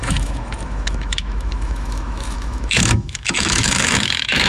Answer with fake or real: fake